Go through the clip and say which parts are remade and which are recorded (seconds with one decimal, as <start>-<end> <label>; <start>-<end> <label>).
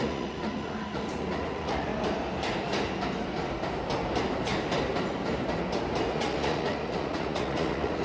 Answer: 0.0-1.9 remade; 1.9-6.1 recorded; 6.1-8.0 remade